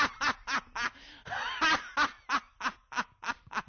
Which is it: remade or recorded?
recorded